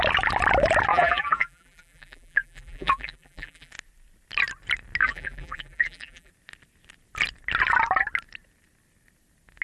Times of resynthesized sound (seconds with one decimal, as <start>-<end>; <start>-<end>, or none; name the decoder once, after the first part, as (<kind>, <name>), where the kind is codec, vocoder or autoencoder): 0.9-3.7 (vocoder, BigVGAN v2); 5.0-6.3